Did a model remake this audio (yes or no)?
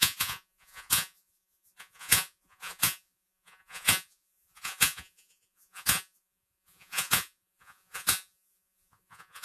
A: yes